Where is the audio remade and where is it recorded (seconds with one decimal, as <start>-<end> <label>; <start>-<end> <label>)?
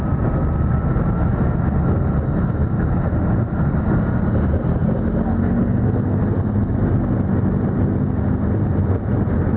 0.0-9.6 recorded